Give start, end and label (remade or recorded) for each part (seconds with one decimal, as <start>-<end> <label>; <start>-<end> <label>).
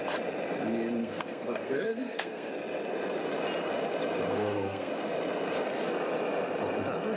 0.0-1.0 recorded; 1.0-2.5 remade; 2.5-4.3 recorded; 4.3-4.9 remade; 4.9-7.2 recorded